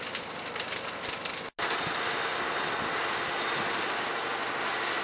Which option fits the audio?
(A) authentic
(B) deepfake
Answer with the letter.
A